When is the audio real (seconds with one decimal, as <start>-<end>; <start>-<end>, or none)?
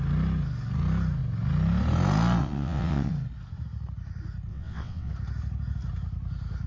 0.0-2.4; 3.1-4.5; 5.1-6.7